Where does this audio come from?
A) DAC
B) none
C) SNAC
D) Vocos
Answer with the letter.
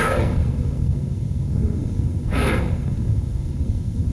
C